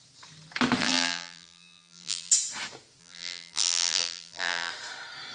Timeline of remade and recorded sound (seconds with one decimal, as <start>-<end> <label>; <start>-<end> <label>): 0.0-0.8 recorded; 0.8-2.3 remade; 2.3-3.0 recorded; 3.0-4.7 remade; 4.7-5.3 recorded